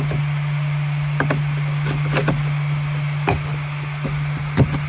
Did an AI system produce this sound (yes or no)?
no